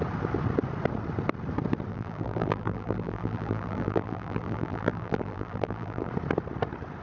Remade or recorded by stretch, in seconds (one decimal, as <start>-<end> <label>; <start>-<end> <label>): 0.0-1.9 recorded; 1.9-6.1 remade; 6.1-7.0 recorded